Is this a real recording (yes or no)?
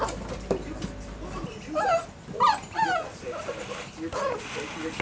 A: yes